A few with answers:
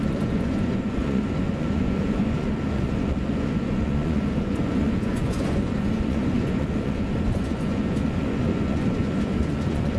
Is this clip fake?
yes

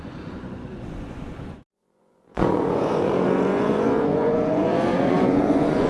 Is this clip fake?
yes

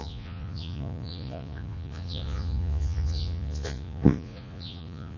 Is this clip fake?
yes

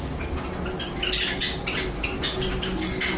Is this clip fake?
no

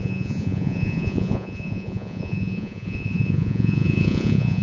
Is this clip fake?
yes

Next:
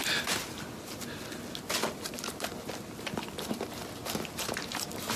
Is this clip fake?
no